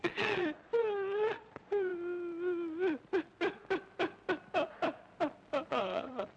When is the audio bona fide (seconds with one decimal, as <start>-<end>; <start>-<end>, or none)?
1.9-5.7